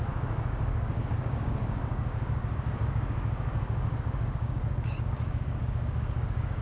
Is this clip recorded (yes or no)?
no